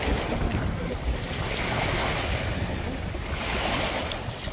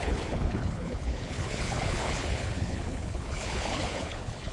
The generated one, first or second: second